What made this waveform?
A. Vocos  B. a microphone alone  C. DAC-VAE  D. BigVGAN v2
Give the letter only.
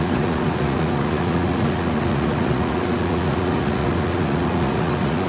A